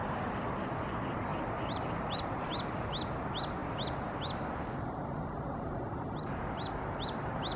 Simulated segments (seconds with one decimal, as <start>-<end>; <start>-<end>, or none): 0.0-0.8; 1.3-2.2